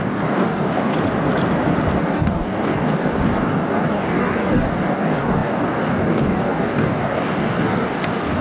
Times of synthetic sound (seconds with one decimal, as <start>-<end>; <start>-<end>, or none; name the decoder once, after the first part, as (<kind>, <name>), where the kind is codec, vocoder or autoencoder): 0.0-0.9 (codec, DAC); 2.0-8.4